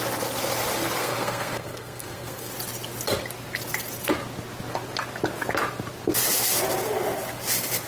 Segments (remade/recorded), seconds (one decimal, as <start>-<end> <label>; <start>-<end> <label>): 0.0-1.0 recorded; 1.0-2.5 remade; 2.5-7.9 recorded